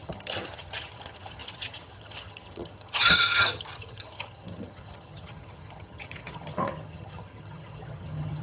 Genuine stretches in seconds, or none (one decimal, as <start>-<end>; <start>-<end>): none

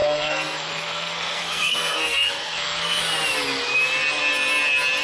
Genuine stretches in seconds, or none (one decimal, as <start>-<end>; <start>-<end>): 3.0-5.0